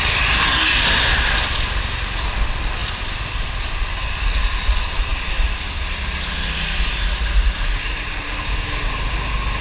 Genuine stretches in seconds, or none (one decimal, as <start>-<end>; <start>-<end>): 0.0-2.8; 3.9-9.6